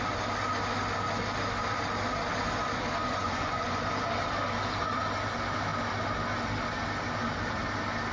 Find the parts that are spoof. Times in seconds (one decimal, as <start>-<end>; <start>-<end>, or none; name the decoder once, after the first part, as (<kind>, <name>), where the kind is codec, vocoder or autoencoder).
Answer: 3.0-3.8 (vocoder, Vocos)